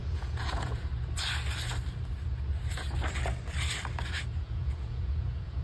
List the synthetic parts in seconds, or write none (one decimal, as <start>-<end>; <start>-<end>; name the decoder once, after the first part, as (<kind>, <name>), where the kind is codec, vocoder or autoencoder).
0.0-0.9 (vocoder, Vocos); 4.3-5.6